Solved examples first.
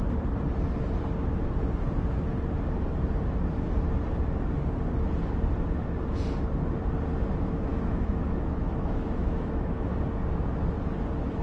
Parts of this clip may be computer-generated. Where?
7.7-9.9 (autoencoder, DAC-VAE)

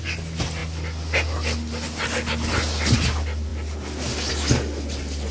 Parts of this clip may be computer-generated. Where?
none

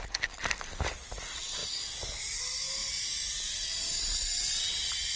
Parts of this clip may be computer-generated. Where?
none

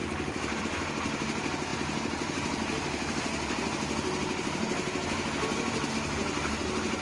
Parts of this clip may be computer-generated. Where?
1.7-5.9 (vocoder, BigVGAN v2)